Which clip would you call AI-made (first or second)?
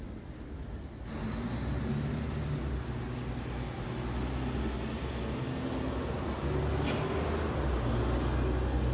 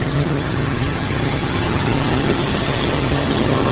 second